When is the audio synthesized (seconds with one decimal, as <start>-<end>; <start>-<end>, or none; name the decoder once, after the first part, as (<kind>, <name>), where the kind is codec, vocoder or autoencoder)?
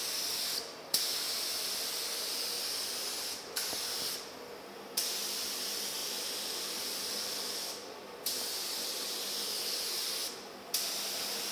none